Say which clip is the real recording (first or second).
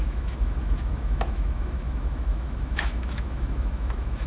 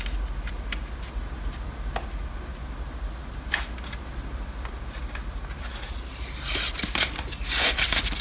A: second